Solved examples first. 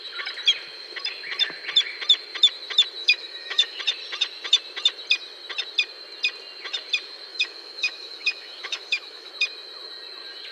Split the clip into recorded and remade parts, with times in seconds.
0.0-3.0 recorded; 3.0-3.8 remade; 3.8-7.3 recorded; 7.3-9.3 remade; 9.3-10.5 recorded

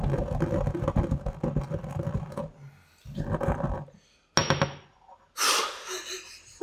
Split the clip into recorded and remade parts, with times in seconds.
0.0-6.6 recorded

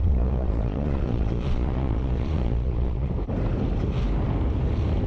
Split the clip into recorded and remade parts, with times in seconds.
0.0-3.1 remade; 3.1-5.1 recorded

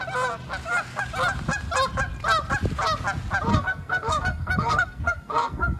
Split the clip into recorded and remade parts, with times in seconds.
0.0-3.5 recorded; 3.5-5.8 remade

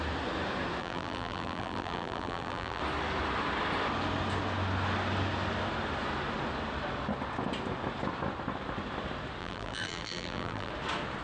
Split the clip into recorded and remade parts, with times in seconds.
0.0-0.8 recorded; 0.8-2.8 remade; 2.8-9.4 recorded; 9.4-10.7 remade; 10.7-11.2 recorded

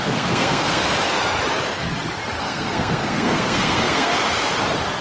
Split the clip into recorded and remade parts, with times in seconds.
0.0-0.8 remade; 0.8-2.4 recorded; 2.4-4.1 remade; 4.1-5.0 recorded

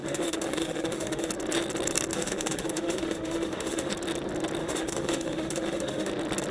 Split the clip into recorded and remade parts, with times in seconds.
0.0-1.3 remade; 1.3-2.1 recorded; 2.1-3.9 remade; 3.9-4.6 recorded; 4.6-6.1 remade; 6.1-6.5 recorded

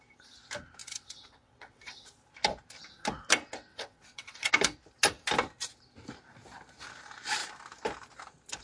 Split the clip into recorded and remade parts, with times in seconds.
0.0-0.8 recorded; 0.8-2.1 remade; 2.1-3.7 recorded; 3.7-4.5 remade; 4.5-8.6 recorded